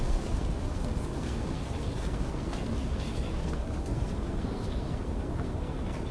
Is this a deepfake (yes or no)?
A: yes